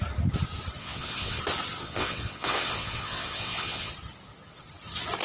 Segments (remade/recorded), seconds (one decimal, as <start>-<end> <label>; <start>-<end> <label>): 0.0-0.8 recorded; 0.8-1.4 remade; 1.4-1.8 recorded; 1.8-3.9 remade; 3.9-5.2 recorded